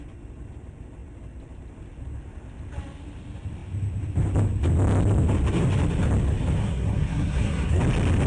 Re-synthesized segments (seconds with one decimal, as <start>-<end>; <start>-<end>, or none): 6.6-7.8